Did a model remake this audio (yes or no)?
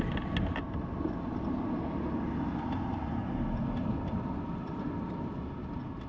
no